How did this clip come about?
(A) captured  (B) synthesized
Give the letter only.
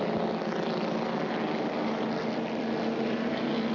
A